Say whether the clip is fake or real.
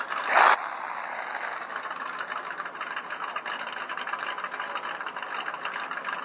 real